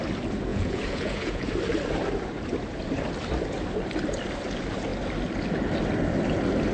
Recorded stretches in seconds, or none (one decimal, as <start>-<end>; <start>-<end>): 0.0-0.5; 1.5-6.7